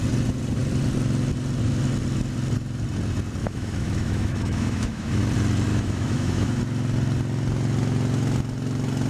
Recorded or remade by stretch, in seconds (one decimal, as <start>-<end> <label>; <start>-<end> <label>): 0.0-3.4 recorded; 3.4-5.2 remade; 5.2-5.7 recorded; 5.7-6.6 remade; 6.6-9.1 recorded